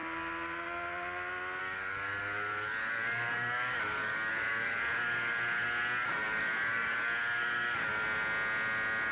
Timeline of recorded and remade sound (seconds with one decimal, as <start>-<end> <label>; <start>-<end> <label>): 0.0-1.6 recorded; 1.6-7.9 remade; 7.9-9.1 recorded